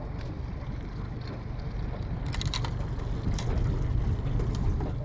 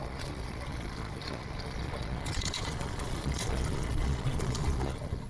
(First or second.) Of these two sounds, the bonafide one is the first